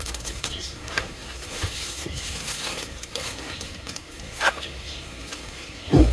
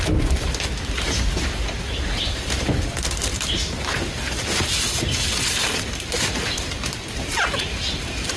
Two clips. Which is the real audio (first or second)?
second